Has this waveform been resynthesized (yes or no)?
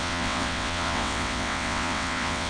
yes